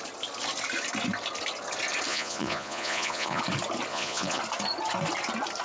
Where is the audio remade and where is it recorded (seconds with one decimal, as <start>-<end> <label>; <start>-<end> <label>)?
0.0-2.1 recorded; 2.1-3.4 remade; 3.4-3.9 recorded; 3.9-4.4 remade; 4.4-5.6 recorded